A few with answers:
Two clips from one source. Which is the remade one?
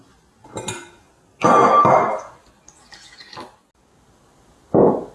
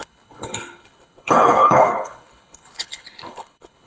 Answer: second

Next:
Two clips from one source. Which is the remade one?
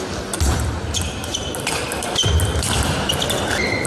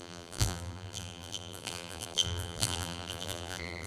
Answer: second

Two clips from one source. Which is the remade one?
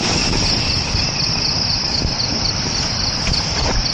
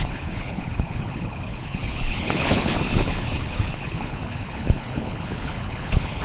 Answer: second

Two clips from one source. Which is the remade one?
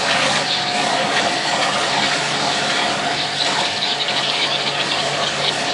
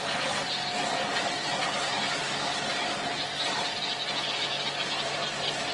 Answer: first